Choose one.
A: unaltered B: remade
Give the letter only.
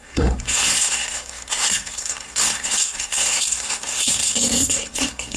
B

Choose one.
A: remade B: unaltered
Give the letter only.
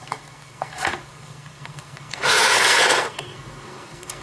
A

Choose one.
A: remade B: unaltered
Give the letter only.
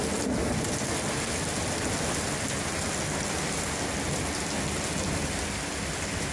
B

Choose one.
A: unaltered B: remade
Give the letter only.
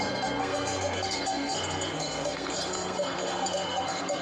B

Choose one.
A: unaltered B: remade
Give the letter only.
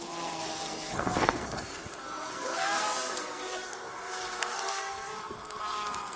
B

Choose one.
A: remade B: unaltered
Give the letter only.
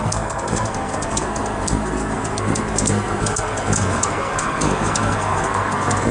A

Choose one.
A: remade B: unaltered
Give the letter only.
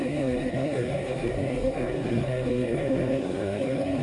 A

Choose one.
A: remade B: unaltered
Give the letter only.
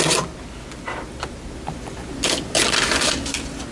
B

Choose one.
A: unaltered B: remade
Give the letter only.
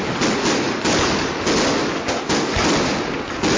A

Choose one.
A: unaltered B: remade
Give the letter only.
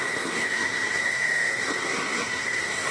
B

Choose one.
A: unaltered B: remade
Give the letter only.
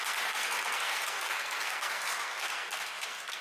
B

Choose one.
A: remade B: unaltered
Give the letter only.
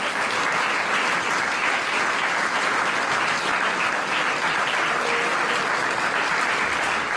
B